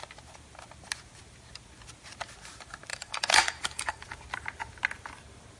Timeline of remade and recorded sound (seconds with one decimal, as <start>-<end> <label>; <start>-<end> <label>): 0.0-2.9 recorded; 2.9-4.1 remade; 4.1-5.6 recorded